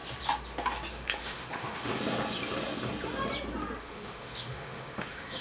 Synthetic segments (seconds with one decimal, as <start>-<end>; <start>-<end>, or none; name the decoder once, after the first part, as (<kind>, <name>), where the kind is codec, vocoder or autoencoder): 0.9-1.9 (autoencoder, DAC-VAE); 3.8-5.4